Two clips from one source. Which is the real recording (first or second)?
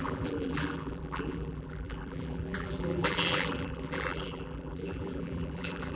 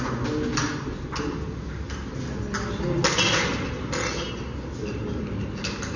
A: second